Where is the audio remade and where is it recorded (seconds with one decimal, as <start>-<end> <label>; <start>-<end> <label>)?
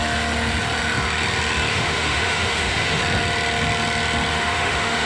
0.0-1.7 recorded; 1.7-3.0 remade; 3.0-4.3 recorded; 4.3-5.1 remade